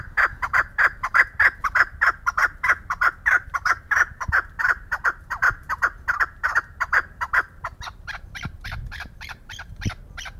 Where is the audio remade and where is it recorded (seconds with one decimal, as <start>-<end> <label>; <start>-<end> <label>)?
0.0-10.4 remade